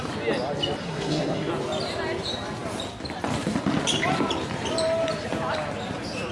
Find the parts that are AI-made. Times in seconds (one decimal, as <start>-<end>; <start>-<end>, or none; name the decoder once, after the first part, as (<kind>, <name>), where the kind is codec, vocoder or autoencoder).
0.8-1.5 (codec, SNAC)